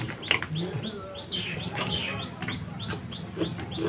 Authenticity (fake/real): real